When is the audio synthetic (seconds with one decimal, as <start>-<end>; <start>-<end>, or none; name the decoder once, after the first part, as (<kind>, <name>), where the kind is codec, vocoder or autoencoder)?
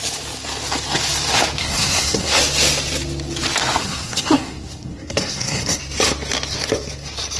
1.6-2.4 (codec, SNAC); 3.8-5.8